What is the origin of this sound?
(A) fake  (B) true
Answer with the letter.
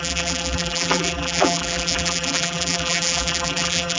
A